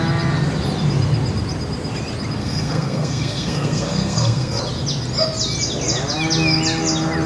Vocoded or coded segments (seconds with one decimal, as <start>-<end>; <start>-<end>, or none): 2.4-4.6